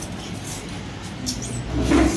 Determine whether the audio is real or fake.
real